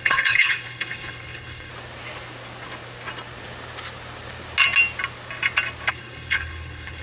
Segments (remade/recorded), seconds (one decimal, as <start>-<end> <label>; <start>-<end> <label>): 0.0-1.7 remade; 1.7-5.9 recorded; 5.9-7.0 remade